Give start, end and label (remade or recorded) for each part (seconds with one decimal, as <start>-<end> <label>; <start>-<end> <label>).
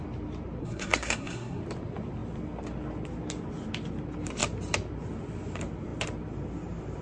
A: 0.0-0.6 recorded; 0.6-1.6 remade; 1.6-7.0 recorded